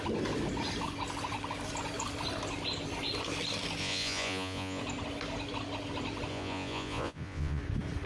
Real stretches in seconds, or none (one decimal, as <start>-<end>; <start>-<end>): 0.0-3.8; 4.8-6.3; 7.6-8.1